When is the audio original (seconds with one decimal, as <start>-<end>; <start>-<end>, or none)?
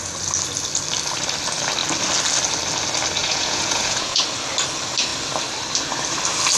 0.0-3.2; 4.2-6.6